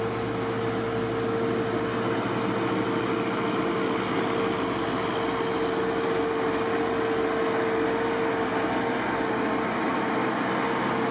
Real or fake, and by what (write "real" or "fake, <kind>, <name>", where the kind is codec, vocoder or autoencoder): real